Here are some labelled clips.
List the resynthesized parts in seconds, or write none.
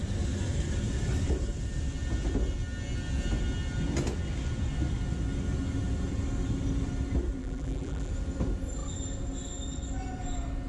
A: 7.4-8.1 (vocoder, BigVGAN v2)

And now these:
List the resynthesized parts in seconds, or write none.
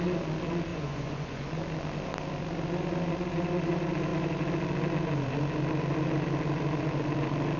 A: 0.7-1.5 (vocoder, Vocos)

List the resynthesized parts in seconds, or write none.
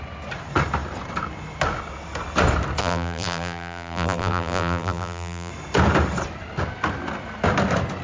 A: 2.8-5.5 (vocoder, BigVGAN v2)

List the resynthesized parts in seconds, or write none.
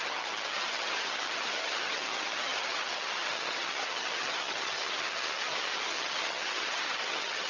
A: 0.0-7.5 (vocoder, HiFi-GAN)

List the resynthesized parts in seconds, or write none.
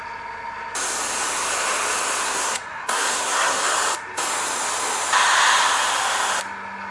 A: 2.2-3.6 (codec, SNAC)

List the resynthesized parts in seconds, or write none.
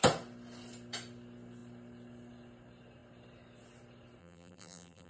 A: 4.2-5.1 (vocoder, BigVGAN v2)